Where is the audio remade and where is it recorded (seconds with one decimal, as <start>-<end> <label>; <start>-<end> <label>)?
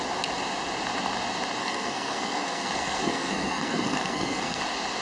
0.0-1.6 recorded; 1.6-4.6 remade; 4.6-5.0 recorded